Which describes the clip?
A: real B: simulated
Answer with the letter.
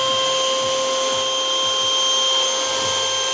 A